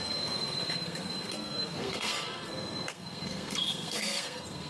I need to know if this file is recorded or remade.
remade